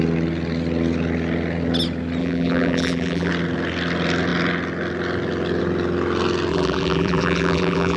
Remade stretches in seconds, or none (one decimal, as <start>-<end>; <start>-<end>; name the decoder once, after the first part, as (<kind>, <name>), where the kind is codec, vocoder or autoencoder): 2.2-3.3 (vocoder, BigVGAN v2); 6.5-8.0